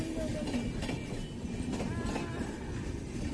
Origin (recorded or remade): recorded